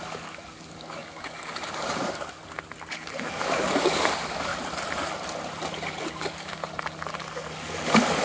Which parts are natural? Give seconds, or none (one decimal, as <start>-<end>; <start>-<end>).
2.4-2.9; 4.5-6.0; 6.6-7.3